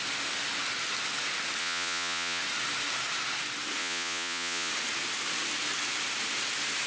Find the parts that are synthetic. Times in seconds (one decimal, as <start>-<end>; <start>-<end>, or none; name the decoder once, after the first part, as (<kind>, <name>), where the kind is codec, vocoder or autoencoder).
1.6-2.4 (vocoder, Vocos); 3.8-4.7